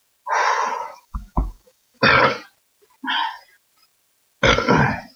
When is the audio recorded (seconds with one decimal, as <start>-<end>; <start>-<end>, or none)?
0.0-0.8; 2.0-5.2